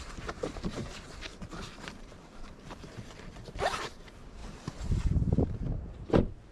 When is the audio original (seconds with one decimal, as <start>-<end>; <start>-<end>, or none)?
none